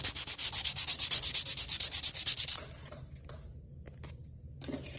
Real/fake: real